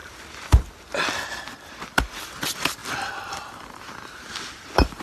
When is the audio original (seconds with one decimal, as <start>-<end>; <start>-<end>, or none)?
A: 0.0-0.8